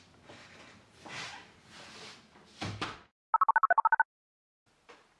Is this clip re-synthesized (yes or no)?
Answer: no